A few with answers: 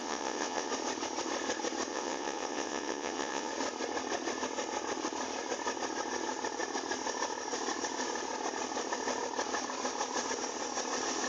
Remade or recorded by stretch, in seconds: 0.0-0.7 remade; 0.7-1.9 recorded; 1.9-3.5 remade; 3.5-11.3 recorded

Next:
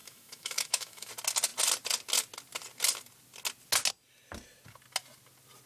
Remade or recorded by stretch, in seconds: 0.0-1.1 remade; 1.1-5.7 recorded

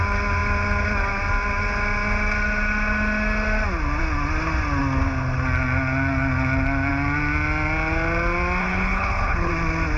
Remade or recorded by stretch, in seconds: 0.0-8.6 recorded; 8.6-9.5 remade; 9.5-10.0 recorded

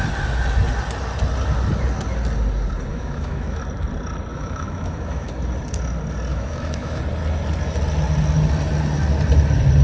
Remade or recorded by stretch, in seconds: 0.0-2.9 recorded; 2.9-3.6 remade; 3.6-4.3 recorded; 4.3-5.3 remade; 5.3-6.3 recorded; 6.3-7.0 remade; 7.0-9.8 recorded

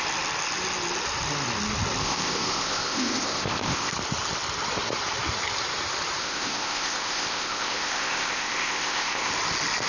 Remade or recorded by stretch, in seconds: 0.0-2.0 recorded; 2.0-3.9 remade; 3.9-6.2 recorded; 6.2-9.3 remade; 9.3-9.9 recorded

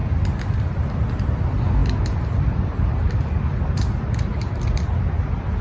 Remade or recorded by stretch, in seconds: 0.0-5.6 recorded